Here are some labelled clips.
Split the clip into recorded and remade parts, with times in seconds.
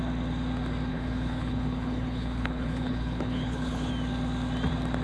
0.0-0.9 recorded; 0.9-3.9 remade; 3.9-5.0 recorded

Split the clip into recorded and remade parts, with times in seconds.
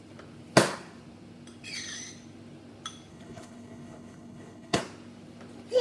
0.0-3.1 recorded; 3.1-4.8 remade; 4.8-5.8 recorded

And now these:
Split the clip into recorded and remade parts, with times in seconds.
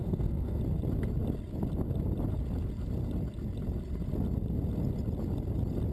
0.0-0.6 remade; 0.6-5.9 recorded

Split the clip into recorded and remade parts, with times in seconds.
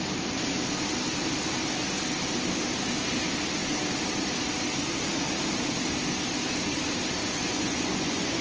0.0-7.2 recorded; 7.2-8.4 remade